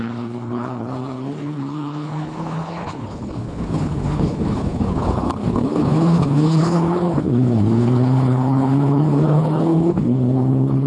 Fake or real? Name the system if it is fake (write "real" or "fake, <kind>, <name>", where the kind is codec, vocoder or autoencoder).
fake, codec, HILCodec